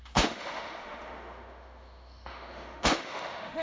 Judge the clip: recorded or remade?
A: remade